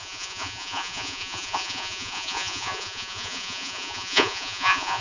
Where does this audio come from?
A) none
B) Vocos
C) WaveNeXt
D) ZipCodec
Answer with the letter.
B